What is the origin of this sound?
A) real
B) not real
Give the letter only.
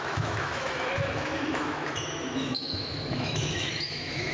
B